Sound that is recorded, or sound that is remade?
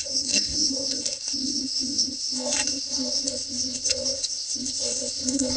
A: remade